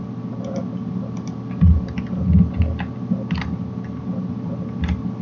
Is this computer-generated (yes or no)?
no